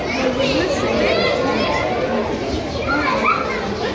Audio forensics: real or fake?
real